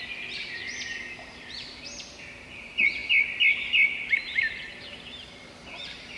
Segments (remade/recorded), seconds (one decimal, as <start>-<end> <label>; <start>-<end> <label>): 0.0-0.6 remade; 0.6-1.1 recorded; 1.1-3.0 remade; 3.0-4.7 recorded; 4.7-6.2 remade